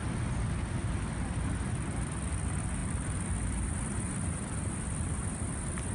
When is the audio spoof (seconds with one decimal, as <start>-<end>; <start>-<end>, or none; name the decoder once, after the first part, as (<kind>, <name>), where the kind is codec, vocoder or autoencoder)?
2.8-5.3 (vocoder, BigVGAN v2)